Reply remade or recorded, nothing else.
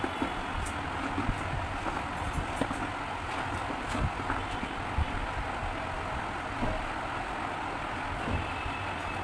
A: recorded